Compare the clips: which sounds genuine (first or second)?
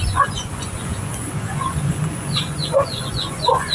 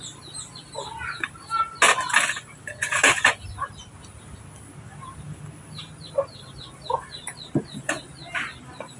second